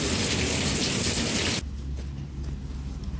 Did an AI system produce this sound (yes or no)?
no